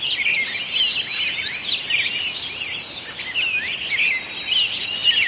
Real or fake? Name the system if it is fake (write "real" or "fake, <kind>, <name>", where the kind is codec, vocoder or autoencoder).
real